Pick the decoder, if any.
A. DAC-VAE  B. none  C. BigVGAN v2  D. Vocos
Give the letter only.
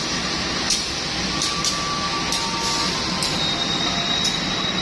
B